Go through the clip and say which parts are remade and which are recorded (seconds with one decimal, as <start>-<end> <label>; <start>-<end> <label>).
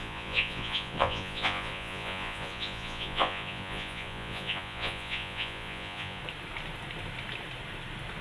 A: 0.0-6.2 remade; 6.2-8.2 recorded